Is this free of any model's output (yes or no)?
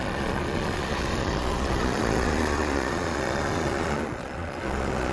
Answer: no